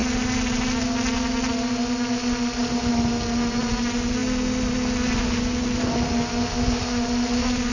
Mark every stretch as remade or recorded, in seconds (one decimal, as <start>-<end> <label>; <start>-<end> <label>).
0.0-7.7 recorded